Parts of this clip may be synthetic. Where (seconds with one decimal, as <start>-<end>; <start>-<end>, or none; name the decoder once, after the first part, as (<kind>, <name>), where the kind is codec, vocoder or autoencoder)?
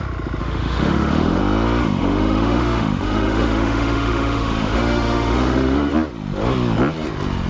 0.4-1.4 (autoencoder, DAC-VAE); 1.8-5.9